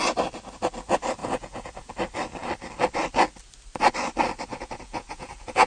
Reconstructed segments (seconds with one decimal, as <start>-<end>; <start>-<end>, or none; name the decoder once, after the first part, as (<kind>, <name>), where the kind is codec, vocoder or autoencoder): 1.2-1.9 (vocoder, Vocos); 4.5-5.7

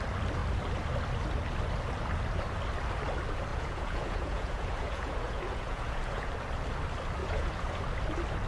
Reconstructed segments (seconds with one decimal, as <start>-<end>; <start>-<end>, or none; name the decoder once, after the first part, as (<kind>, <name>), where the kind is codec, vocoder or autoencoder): 3.5-6.3 (vocoder, Vocos); 7.2-7.8

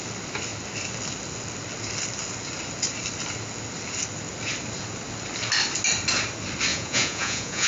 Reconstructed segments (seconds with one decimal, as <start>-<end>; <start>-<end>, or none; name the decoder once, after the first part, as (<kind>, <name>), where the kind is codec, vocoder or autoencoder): 6.7-7.7 (vocoder, Vocos)

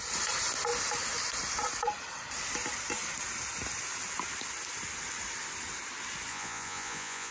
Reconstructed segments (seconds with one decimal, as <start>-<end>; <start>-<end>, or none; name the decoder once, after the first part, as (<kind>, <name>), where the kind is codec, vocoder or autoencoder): 6.3-7.3 (vocoder, Vocos)

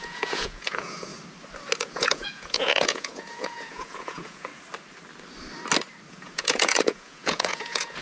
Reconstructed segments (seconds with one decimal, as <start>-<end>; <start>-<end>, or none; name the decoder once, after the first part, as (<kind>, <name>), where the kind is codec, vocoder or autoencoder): 0.0-1.1 (vocoder, Vocos); 1.8-4.5; 6.1-8.0

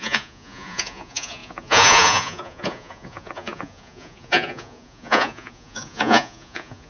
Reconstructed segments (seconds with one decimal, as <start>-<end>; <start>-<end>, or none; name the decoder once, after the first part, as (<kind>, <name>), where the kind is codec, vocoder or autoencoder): 0.0-6.9 (vocoder, Vocos)

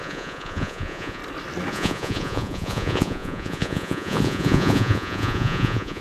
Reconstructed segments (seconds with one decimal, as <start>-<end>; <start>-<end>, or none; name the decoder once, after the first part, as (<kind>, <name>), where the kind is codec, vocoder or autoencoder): 0.0-1.2 (vocoder, Vocos); 1.7-6.0